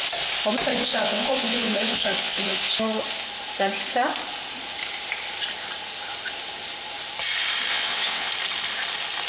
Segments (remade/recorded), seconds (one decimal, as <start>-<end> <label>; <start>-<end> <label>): 0.0-0.7 recorded; 0.7-2.6 remade; 2.6-7.7 recorded; 7.7-8.3 remade; 8.3-9.3 recorded